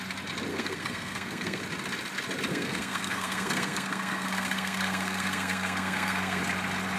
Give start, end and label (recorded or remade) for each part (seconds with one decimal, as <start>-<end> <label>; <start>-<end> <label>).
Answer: 0.0-0.5 recorded; 0.5-1.6 remade; 1.6-2.5 recorded; 2.5-6.4 remade; 6.4-7.0 recorded